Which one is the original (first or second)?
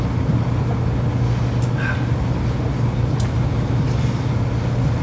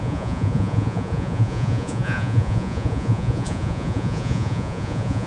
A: first